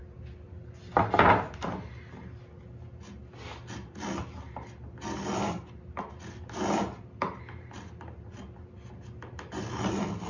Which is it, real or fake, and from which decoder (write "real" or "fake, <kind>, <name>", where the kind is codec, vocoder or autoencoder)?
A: real